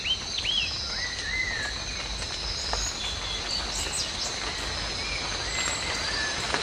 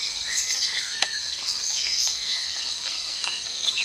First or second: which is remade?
second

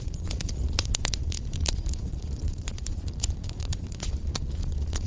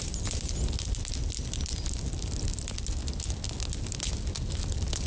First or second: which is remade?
first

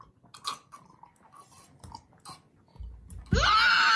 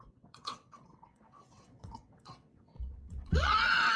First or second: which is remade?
second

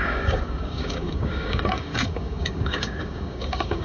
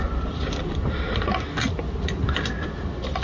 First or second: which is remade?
first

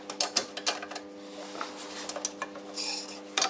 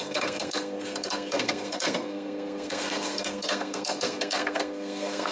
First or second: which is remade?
second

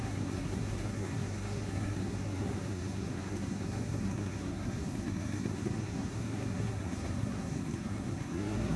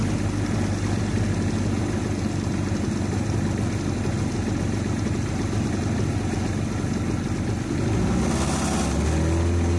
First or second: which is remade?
first